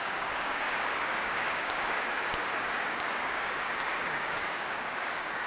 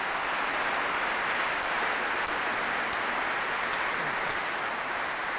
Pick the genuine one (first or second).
second